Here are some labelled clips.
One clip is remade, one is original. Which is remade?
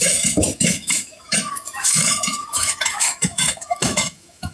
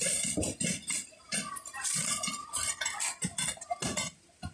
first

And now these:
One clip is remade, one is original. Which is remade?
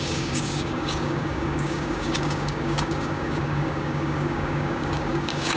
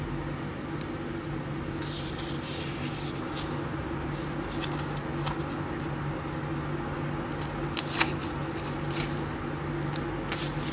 first